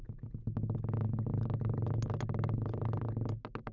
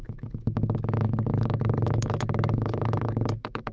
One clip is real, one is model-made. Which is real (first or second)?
first